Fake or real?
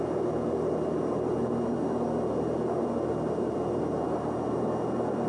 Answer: real